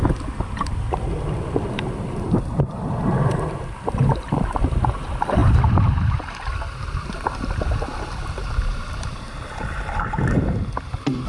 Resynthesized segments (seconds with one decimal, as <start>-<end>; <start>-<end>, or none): 0.0-11.3